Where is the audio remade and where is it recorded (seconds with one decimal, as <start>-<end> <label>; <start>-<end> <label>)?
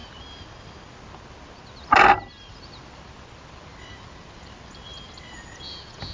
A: 0.0-6.1 recorded